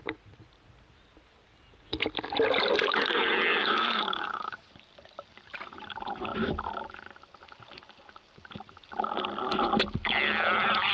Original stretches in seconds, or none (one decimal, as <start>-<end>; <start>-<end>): 0.0-3.6; 4.7-10.9